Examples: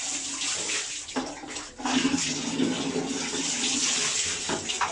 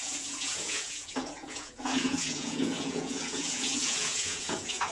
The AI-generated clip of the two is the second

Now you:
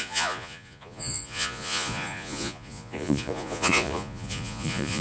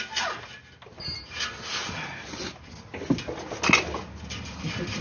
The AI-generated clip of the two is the first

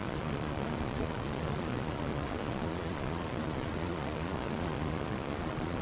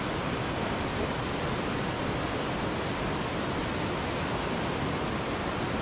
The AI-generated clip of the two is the first